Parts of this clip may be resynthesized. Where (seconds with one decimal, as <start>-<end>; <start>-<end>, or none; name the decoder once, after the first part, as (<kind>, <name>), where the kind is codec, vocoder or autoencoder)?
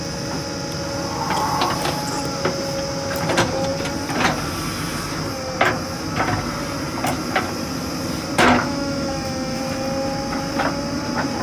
8.6-9.6 (autoencoder, DAC-VAE)